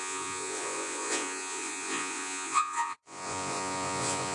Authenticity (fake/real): fake